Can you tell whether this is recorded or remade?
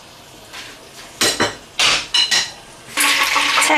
recorded